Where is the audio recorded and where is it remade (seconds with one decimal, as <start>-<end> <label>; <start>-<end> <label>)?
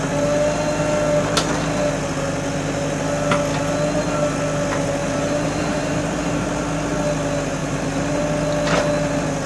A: 0.0-5.0 recorded; 5.0-6.6 remade; 6.6-7.6 recorded; 7.6-8.2 remade; 8.2-9.5 recorded